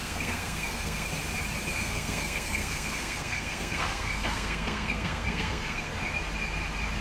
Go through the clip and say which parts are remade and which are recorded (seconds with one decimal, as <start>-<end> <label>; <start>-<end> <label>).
0.0-1.1 remade; 1.1-1.7 recorded; 1.7-5.9 remade; 5.9-7.0 recorded